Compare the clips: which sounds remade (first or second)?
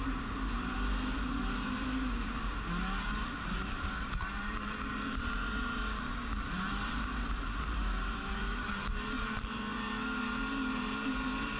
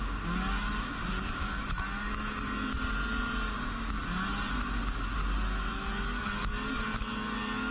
first